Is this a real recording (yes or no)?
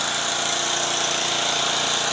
no